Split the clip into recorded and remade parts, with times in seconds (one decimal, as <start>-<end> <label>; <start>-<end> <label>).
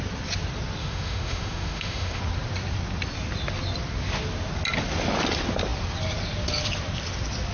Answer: 0.0-0.8 recorded; 0.8-2.2 remade; 2.2-7.5 recorded